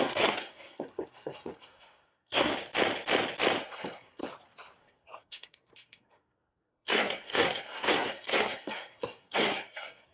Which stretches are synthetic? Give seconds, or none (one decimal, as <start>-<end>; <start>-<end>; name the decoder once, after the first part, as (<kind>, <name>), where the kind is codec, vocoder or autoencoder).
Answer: 0.0-2.5 (codec, SNAC); 3.6-4.2; 4.8-10.1